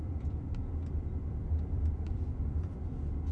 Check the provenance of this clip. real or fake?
real